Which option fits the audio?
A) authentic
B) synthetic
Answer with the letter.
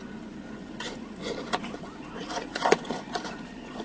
B